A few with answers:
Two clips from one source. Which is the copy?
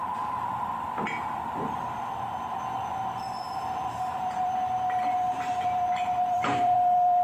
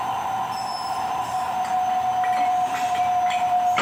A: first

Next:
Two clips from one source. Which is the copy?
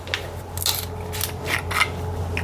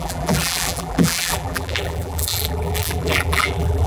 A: second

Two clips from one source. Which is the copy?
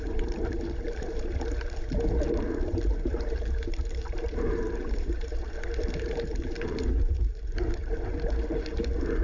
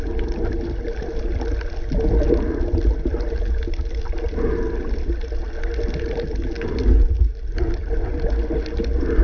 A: first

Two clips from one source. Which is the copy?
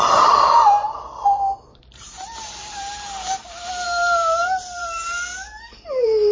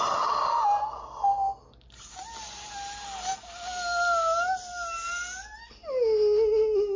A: first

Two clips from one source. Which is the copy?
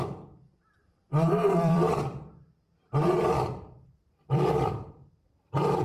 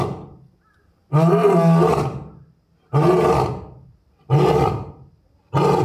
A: first